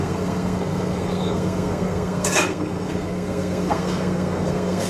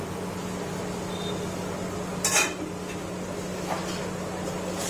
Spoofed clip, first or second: first